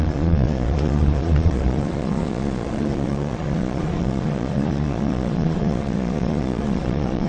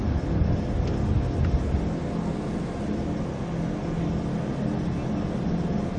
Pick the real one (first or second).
second